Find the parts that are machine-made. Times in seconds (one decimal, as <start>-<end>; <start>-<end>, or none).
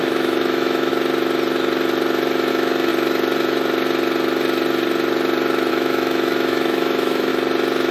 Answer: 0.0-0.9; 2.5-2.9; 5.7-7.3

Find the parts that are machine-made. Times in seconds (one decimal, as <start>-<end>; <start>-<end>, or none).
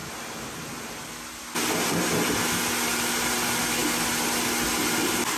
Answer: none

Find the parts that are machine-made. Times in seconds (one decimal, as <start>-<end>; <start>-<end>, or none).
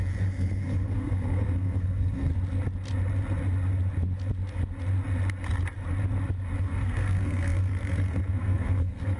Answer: 0.0-2.3; 6.6-9.2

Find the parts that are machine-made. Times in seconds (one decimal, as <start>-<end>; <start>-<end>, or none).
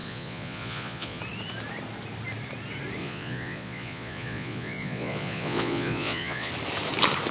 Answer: 0.0-1.2; 3.0-6.5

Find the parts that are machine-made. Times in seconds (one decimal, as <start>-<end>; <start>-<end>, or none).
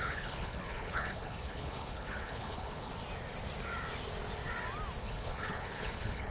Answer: 0.0-2.9; 5.0-6.3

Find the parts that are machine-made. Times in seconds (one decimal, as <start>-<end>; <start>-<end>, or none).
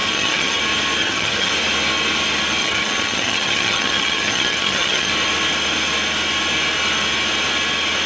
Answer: 0.0-0.6; 1.0-1.5; 2.6-5.1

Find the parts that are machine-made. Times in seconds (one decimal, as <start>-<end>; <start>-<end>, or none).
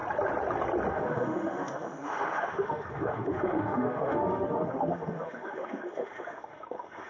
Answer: 0.9-7.1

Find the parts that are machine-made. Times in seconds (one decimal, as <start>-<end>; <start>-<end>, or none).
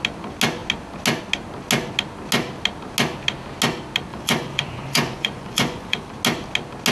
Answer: 4.1-6.1